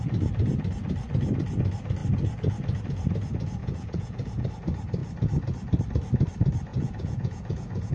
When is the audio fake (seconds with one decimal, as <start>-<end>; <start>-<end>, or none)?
3.6-4.5; 6.7-7.9